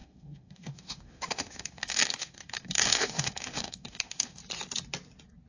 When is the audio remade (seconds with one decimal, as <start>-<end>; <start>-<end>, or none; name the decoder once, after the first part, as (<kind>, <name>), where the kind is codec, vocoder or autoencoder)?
0.0-4.4 (autoencoder, DAC-VAE)